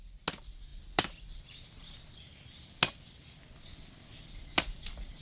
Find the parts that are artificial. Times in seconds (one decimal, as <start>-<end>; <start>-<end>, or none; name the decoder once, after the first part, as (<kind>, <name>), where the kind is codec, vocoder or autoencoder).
none